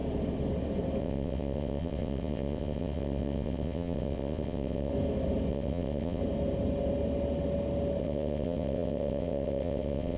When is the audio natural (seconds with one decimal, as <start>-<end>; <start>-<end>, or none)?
0.0-1.0; 4.9-5.5; 6.2-8.0